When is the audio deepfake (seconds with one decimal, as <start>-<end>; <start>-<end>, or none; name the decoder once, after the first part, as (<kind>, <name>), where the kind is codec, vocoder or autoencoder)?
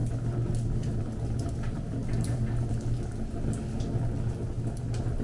none